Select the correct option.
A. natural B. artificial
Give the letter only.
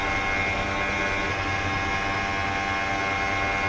A